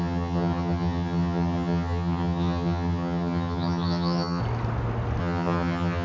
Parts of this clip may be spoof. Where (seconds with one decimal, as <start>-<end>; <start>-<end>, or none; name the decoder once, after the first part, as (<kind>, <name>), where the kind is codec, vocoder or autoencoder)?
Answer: 0.0-4.4 (vocoder, HiFi-GAN); 5.2-6.0

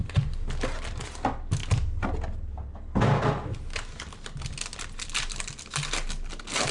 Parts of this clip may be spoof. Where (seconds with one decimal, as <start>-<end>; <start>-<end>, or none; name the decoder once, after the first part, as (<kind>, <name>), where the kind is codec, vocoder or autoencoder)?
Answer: none

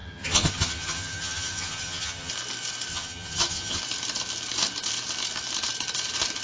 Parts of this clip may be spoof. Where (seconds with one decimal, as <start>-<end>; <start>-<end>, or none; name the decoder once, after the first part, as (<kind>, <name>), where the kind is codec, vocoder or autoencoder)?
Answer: 0.0-2.3 (vocoder, HiFi-GAN); 2.9-3.8

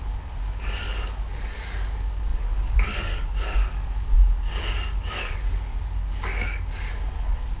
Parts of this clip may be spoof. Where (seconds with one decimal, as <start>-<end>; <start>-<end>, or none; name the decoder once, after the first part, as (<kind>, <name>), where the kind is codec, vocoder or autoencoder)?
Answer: 0.0-7.6 (codec, DAC)

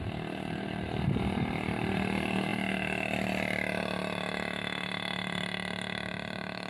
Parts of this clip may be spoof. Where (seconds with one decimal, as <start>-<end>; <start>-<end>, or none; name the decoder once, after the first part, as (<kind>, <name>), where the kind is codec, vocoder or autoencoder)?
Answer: 0.0-6.7 (vocoder, BigVGAN v2)

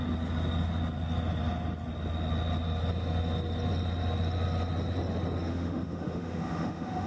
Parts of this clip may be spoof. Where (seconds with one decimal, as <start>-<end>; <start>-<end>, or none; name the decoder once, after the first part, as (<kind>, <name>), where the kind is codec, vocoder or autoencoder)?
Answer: 5.5-7.1 (autoencoder, DAC-VAE)

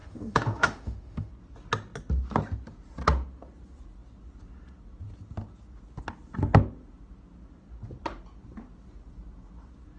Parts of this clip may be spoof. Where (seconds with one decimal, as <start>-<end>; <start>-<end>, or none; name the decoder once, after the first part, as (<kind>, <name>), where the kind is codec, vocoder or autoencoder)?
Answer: 0.0-1.3 (autoencoder, DAC-VAE)

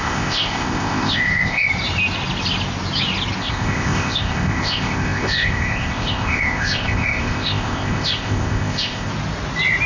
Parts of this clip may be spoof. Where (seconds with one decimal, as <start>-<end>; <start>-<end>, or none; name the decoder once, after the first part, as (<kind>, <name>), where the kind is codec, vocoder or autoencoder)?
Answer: 0.0-1.7 (codec, ZipCodec); 3.4-9.1